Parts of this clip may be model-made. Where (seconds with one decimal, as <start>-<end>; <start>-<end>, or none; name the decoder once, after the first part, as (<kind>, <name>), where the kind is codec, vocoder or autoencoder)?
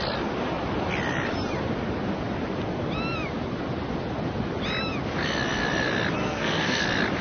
6.2-6.8 (codec, SNAC)